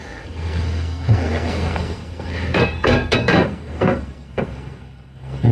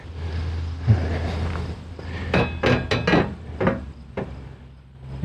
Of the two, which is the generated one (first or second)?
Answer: first